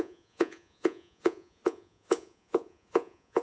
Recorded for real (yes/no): no